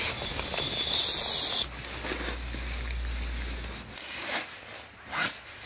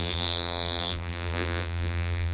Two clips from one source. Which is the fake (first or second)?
second